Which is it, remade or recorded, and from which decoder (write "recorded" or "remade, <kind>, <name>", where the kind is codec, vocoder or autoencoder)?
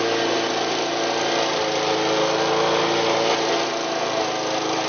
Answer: recorded